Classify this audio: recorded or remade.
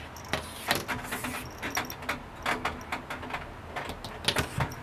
recorded